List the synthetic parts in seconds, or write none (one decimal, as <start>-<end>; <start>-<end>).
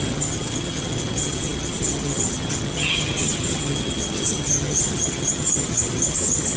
0.0-6.6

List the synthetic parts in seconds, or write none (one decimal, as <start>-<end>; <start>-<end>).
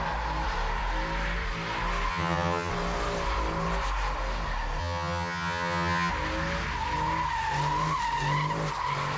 2.1-2.7; 4.8-6.1